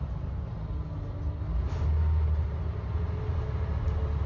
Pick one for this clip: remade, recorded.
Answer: recorded